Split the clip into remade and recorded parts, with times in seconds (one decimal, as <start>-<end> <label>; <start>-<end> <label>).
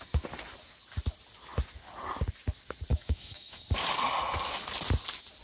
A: 0.0-2.9 recorded; 2.9-3.6 remade; 3.6-5.4 recorded